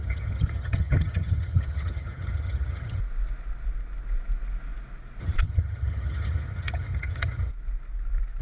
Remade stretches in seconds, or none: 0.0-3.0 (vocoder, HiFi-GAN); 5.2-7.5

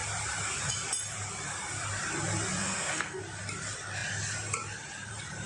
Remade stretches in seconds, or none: 2.6-3.2 (codec, SNAC)

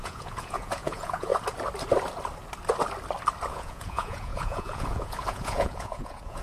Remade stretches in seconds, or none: 0.0-1.3 (vocoder, Vocos); 3.5-6.4

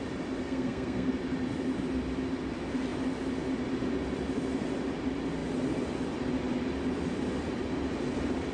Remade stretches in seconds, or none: 0.4-1.1 (codec, SNAC)

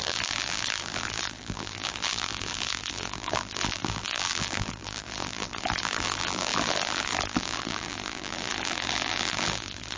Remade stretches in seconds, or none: 0.0-10.0 (vocoder, BigVGAN v2)

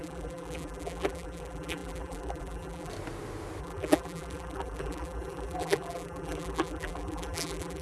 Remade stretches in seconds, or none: 0.0-2.9 (vocoder, BigVGAN v2); 3.6-7.8

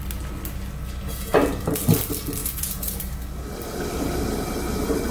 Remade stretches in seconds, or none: 2.4-3.0 (vocoder, Vocos)